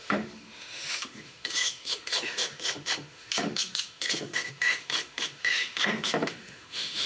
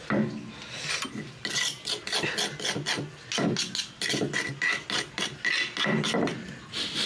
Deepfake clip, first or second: first